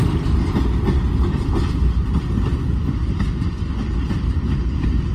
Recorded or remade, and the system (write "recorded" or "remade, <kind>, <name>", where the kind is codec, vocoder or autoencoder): recorded